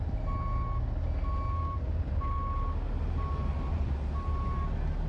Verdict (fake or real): real